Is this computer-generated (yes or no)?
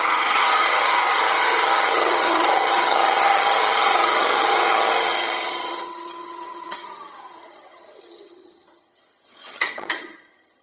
yes